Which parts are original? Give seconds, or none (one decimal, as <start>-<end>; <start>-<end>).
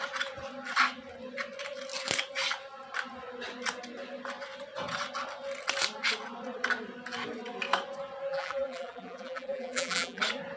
0.0-8.3; 10.2-10.6